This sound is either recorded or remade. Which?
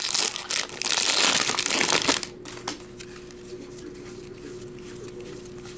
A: recorded